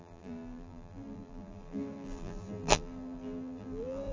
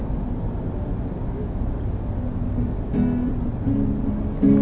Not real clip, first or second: first